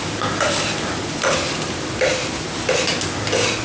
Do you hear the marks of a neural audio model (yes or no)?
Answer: no